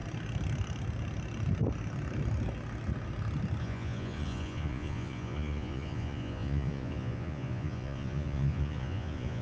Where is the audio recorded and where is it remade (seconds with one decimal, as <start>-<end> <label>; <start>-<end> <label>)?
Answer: 0.0-3.6 recorded; 3.6-9.4 remade